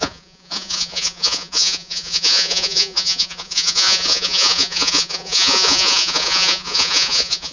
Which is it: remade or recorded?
remade